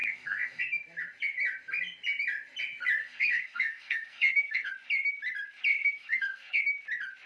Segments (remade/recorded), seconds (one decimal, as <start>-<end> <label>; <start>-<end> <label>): 0.0-0.6 remade; 0.6-3.0 recorded; 3.0-4.7 remade; 4.7-5.7 recorded; 5.7-6.6 remade; 6.6-7.3 recorded